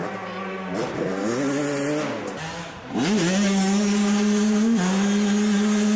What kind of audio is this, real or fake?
real